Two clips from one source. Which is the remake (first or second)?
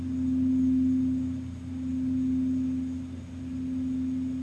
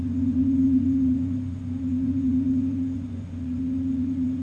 second